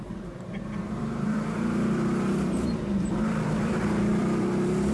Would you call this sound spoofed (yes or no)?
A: yes